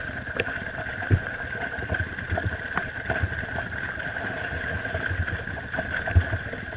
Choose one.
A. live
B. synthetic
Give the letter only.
A